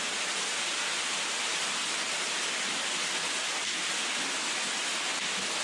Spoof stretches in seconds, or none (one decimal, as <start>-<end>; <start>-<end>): none